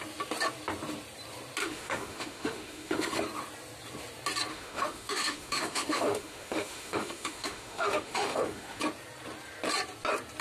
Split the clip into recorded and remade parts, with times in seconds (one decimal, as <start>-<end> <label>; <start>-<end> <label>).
0.0-1.6 recorded; 1.6-3.2 remade; 3.2-4.5 recorded; 4.5-8.8 remade; 8.8-10.4 recorded

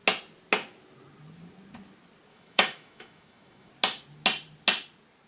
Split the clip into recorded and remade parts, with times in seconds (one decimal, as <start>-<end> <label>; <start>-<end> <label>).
0.0-2.3 recorded; 2.3-3.7 remade; 3.7-5.3 recorded